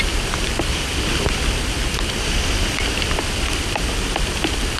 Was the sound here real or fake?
fake